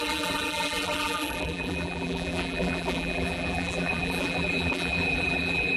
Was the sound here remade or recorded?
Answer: remade